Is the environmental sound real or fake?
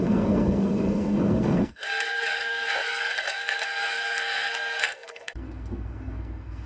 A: fake